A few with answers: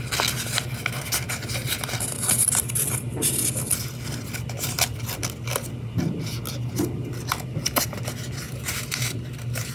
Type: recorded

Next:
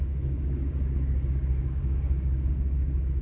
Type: remade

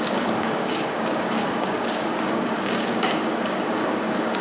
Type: remade